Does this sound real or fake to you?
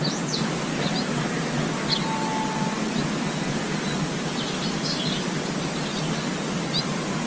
real